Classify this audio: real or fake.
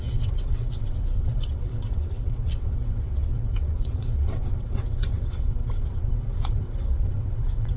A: fake